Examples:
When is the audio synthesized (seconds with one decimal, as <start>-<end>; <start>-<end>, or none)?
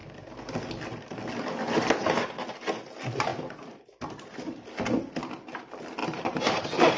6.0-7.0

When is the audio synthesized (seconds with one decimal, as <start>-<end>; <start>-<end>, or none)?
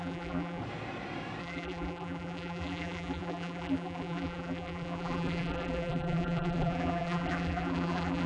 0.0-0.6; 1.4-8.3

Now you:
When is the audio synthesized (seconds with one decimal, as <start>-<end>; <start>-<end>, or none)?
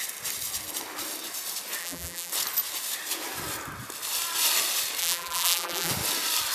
1.8-2.3; 5.0-5.9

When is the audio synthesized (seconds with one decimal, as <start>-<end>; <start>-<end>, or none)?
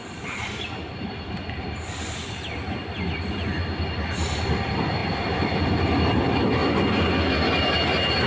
0.0-4.6; 5.0-6.1; 6.6-7.1